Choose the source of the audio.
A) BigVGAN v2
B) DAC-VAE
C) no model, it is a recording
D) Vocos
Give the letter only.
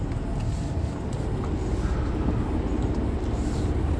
C